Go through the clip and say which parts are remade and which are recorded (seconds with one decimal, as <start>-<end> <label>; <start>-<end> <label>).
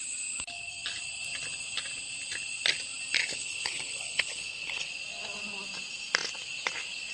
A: 0.0-3.3 recorded; 3.3-4.9 remade; 4.9-7.1 recorded